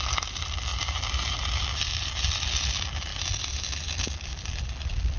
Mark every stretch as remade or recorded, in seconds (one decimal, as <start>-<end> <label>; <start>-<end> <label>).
0.0-5.2 recorded